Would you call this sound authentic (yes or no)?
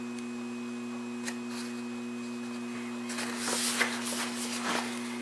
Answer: yes